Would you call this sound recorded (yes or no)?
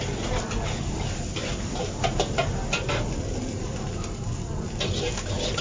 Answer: yes